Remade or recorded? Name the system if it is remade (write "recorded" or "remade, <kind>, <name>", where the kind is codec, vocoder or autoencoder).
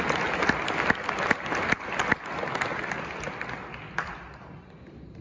recorded